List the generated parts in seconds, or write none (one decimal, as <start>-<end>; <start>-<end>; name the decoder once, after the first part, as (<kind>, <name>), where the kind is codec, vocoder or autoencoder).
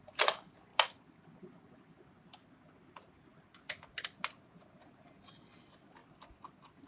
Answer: none